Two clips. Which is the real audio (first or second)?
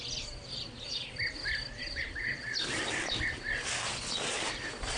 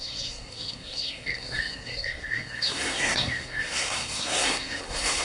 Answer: first